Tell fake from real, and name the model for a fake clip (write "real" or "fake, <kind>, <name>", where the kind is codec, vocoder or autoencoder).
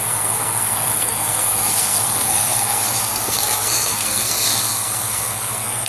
fake, codec, SNAC